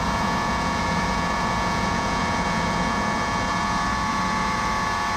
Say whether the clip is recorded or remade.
remade